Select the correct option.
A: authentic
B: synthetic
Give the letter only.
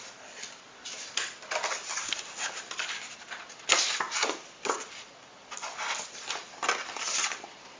A